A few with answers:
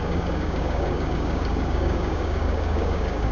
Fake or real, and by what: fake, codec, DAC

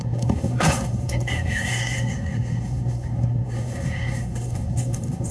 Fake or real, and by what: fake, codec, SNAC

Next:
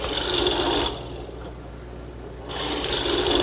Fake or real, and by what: real